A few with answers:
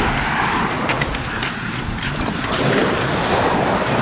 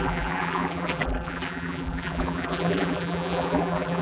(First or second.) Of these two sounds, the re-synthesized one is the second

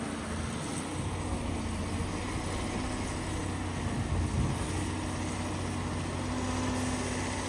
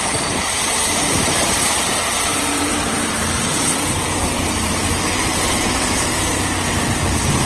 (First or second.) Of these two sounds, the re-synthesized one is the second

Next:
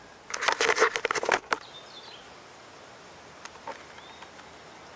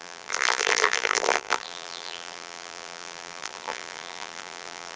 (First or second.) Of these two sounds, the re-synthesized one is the second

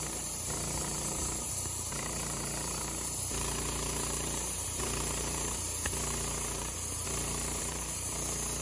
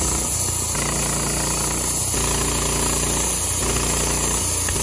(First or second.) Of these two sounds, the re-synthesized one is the first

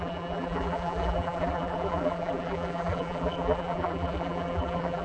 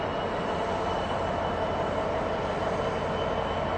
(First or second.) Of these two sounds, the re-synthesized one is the first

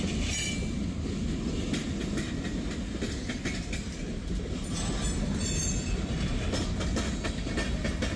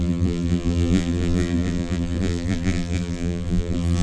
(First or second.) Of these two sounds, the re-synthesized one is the second